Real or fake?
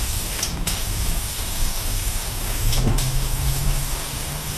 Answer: fake